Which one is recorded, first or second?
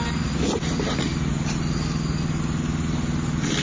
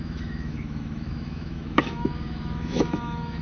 first